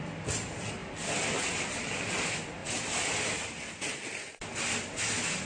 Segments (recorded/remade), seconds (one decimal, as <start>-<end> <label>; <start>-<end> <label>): 0.0-5.4 recorded